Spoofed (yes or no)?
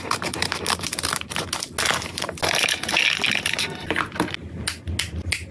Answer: no